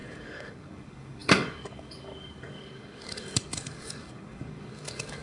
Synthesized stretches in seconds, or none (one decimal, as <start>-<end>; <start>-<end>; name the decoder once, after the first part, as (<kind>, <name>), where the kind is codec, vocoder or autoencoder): 0.0-5.2 (codec, DAC)